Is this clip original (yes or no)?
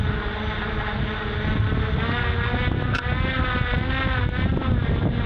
yes